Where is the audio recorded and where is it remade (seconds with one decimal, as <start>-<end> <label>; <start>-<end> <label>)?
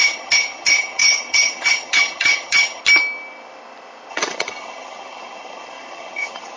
0.0-2.8 remade; 2.8-4.1 recorded; 4.1-6.6 remade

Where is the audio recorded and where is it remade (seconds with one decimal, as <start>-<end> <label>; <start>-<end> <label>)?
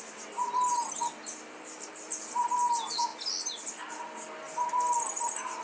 0.0-5.6 recorded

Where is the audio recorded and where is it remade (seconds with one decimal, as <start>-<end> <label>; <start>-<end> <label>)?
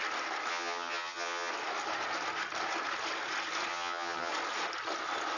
0.0-0.5 recorded; 0.5-1.5 remade; 1.5-3.7 recorded; 3.7-4.3 remade; 4.3-5.4 recorded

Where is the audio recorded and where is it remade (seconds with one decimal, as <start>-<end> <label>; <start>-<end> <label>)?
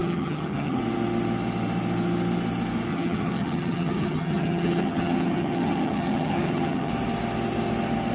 0.0-0.8 remade; 0.8-2.9 recorded; 2.9-6.9 remade; 6.9-8.1 recorded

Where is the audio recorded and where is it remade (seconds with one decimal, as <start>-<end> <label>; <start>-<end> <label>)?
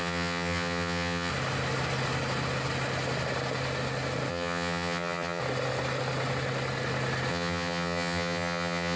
0.0-1.3 remade; 1.3-4.3 recorded; 4.3-5.4 remade; 5.4-7.3 recorded; 7.3-9.0 remade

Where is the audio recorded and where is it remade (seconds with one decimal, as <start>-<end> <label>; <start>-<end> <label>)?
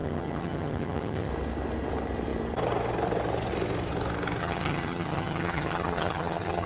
0.0-1.3 remade; 1.3-4.4 recorded; 4.4-6.7 remade